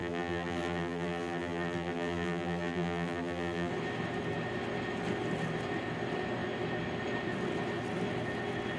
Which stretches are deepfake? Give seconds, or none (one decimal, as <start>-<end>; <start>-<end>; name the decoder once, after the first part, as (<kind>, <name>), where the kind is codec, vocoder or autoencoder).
0.0-3.7 (vocoder, BigVGAN v2)